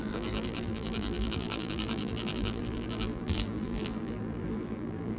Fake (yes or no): yes